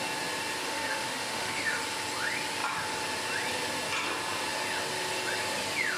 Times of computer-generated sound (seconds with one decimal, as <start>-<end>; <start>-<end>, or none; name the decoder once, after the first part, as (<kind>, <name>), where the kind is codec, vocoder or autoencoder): 0.6-1.8 (autoencoder, DAC-VAE)